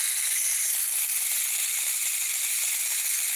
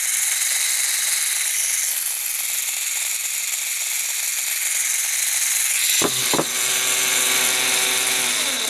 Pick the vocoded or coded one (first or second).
first